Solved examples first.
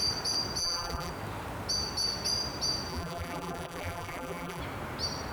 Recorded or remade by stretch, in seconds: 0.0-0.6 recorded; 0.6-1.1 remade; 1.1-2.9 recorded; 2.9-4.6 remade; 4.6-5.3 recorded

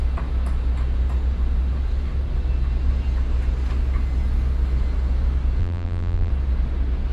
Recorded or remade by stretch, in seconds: 0.0-5.6 recorded; 5.6-6.3 remade; 6.3-7.1 recorded

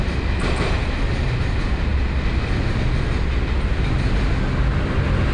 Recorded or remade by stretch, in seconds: 0.0-5.3 recorded

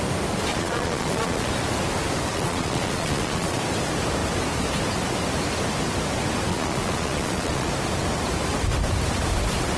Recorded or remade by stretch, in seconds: 0.0-0.5 recorded; 0.5-1.5 remade; 1.5-2.3 recorded; 2.3-3.6 remade; 3.6-6.5 recorded; 6.5-7.7 remade; 7.7-9.8 recorded

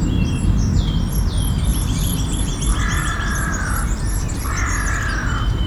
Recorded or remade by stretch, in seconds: 0.0-1.7 recorded; 1.7-2.5 remade; 2.5-3.3 recorded; 3.3-4.5 remade; 4.5-5.7 recorded